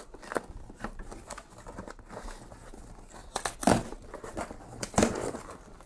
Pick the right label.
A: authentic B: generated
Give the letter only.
A